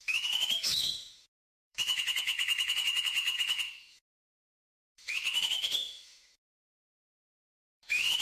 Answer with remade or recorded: remade